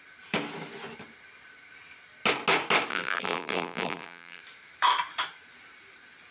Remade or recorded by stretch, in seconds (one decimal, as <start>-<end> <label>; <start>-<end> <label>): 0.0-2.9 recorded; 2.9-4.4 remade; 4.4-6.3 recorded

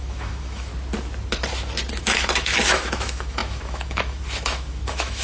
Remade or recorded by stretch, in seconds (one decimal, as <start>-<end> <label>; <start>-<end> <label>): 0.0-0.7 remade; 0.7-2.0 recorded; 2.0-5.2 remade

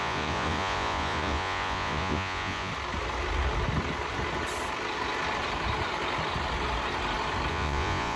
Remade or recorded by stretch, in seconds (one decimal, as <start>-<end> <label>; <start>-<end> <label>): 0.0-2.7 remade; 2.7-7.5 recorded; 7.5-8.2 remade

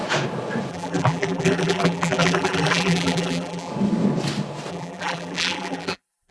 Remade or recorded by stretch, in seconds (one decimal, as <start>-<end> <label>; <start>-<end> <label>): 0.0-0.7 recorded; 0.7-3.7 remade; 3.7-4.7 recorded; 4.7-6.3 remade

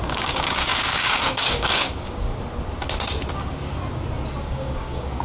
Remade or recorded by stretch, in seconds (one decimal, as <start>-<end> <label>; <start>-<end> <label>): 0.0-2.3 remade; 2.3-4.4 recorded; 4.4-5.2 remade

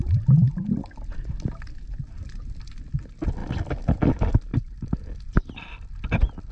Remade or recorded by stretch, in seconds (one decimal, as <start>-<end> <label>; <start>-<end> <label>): 0.0-6.5 recorded

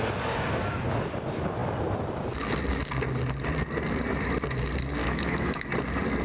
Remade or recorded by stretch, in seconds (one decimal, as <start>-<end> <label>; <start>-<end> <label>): 0.0-5.0 recorded; 5.0-5.7 remade; 5.7-6.2 recorded